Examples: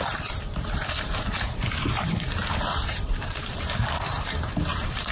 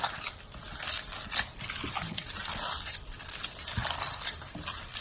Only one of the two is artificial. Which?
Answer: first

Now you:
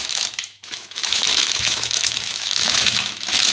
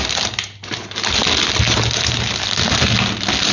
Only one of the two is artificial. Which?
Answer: first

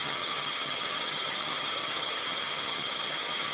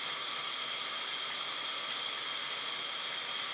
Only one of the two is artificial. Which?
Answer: first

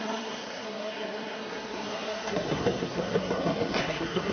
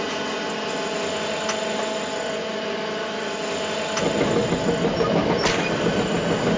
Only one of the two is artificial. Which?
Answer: first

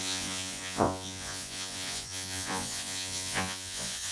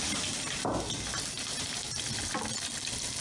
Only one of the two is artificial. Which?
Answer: first